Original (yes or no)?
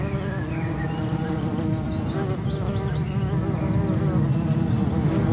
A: yes